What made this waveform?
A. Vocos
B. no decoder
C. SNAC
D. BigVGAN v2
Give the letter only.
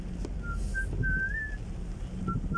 B